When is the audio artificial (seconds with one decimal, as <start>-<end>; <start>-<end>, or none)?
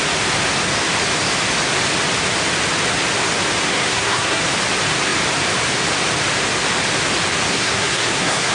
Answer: 3.7-4.4; 7.5-8.5